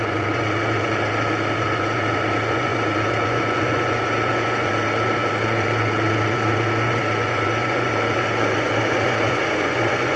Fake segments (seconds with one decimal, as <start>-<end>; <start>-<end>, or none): 0.0-10.2